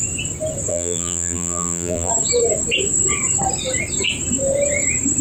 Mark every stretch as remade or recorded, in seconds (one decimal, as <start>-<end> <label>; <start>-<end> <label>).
0.0-0.7 recorded; 0.7-2.1 remade; 2.1-5.2 recorded